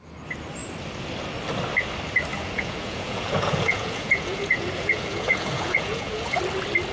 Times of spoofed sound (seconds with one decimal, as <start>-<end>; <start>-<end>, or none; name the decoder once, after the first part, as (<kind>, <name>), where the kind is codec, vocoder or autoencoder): 2.3-6.4 (vocoder, Vocos)

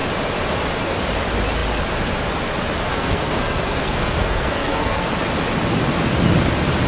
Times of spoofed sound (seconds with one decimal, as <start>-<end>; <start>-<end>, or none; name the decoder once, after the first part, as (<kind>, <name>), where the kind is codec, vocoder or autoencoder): 2.9-5.1 (codec, SNAC)

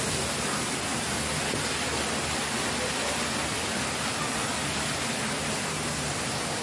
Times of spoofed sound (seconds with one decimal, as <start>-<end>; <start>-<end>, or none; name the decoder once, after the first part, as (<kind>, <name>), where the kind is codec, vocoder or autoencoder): none